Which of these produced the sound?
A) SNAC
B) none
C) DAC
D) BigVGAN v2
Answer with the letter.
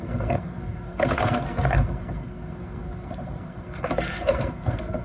A